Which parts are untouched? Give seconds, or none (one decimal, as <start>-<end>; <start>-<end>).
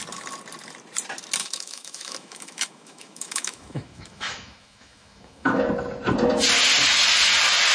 0.0-1.4; 5.6-7.7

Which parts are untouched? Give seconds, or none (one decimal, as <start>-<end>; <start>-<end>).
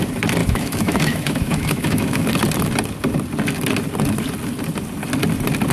0.0-0.4; 2.3-5.7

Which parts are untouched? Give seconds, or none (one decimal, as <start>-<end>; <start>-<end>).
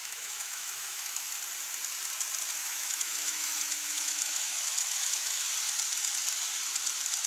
1.3-2.6; 5.5-7.3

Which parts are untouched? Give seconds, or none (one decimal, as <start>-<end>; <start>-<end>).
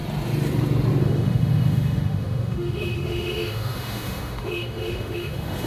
0.0-1.0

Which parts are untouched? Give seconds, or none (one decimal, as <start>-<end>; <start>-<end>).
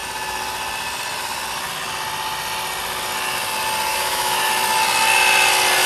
0.0-3.9; 4.5-5.9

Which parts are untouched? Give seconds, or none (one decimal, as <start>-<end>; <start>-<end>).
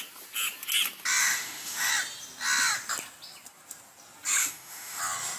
0.0-1.2; 1.9-4.4; 5.0-5.4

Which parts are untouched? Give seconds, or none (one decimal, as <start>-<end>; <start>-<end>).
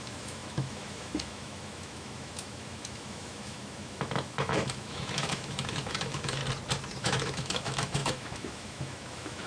6.4-7.0